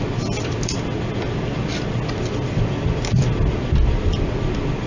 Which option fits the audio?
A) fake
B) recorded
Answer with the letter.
B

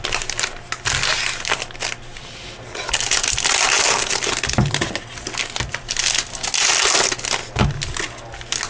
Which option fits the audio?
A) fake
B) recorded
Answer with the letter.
B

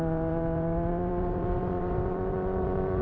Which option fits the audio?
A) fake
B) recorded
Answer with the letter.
A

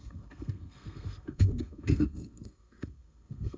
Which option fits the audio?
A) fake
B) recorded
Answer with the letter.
A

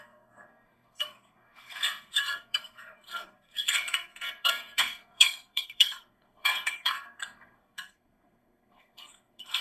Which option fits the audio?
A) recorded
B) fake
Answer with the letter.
B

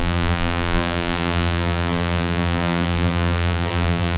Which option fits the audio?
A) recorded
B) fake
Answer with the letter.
B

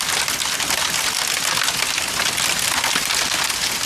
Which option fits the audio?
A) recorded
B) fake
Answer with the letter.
A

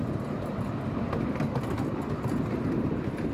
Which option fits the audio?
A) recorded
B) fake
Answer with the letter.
A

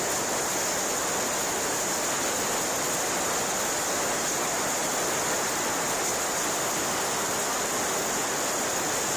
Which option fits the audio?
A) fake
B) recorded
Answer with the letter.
B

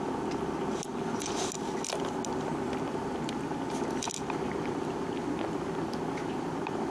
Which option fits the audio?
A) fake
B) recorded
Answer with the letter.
B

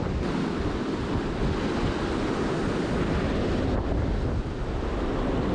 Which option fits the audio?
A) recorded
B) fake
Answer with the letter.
A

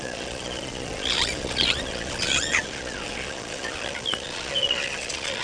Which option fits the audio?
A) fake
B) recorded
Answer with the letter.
A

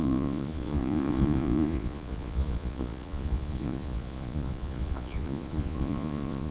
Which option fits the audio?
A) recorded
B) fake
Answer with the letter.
B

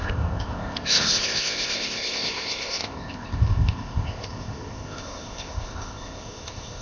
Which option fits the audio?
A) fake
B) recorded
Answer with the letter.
A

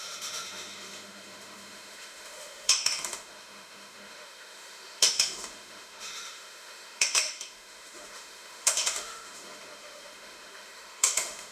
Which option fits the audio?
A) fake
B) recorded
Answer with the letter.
A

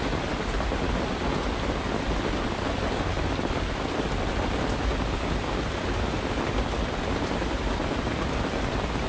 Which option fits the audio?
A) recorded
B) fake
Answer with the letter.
A